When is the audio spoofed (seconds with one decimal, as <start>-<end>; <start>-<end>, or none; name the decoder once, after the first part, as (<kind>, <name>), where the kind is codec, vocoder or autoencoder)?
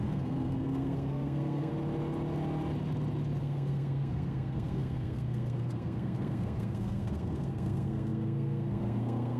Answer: 0.0-1.7 (codec, SNAC); 3.4-9.4